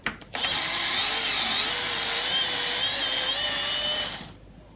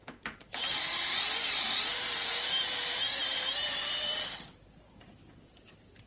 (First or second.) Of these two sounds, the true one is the first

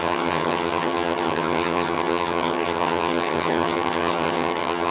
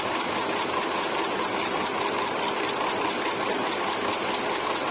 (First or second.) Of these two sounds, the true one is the second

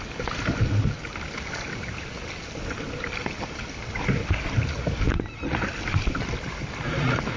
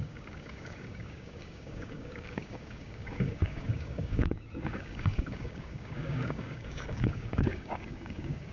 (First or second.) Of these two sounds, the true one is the first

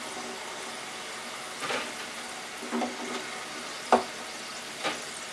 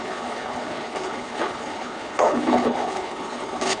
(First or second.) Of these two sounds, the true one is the first